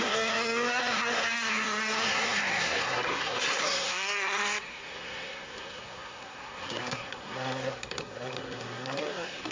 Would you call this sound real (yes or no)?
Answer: no